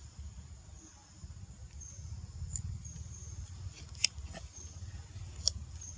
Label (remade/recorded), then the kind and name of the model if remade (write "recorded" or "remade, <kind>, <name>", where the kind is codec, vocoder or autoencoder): recorded